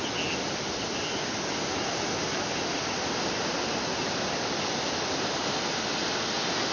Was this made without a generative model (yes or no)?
yes